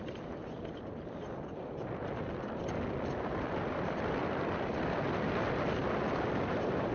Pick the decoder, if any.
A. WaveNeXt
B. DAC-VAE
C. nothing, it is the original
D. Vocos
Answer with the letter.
C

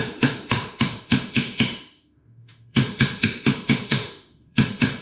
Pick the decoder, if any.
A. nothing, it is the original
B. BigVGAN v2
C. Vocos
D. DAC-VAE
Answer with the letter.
D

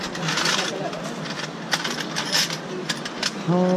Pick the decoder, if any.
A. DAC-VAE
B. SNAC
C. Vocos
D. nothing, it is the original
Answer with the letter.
D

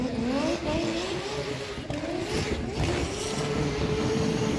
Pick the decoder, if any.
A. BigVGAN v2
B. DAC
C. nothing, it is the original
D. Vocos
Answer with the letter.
C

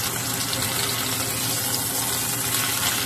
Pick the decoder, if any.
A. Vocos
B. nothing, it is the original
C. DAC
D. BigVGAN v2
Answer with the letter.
B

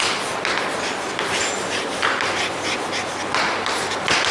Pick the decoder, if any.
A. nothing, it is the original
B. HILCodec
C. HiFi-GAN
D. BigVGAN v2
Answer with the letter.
A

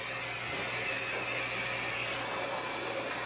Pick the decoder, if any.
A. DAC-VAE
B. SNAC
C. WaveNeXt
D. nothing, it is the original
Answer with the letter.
D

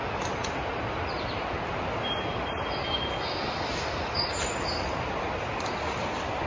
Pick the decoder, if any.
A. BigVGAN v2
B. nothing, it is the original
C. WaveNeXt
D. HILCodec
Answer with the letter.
B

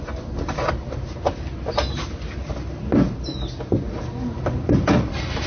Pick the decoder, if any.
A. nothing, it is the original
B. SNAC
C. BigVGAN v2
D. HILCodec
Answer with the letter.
A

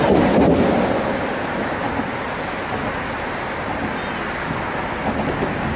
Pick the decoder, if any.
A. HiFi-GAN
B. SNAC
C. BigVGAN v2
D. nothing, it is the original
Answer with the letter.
D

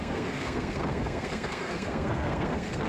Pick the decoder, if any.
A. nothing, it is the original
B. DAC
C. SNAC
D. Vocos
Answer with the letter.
C